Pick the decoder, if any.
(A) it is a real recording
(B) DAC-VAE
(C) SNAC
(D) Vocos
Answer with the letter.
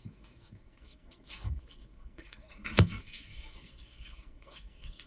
C